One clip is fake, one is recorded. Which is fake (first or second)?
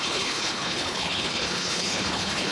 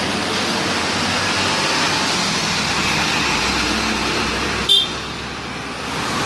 first